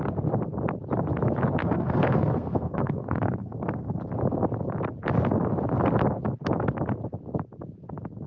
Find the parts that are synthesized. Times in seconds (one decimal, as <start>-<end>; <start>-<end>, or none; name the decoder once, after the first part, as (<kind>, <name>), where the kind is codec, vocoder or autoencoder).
1.6-4.0 (codec, SNAC)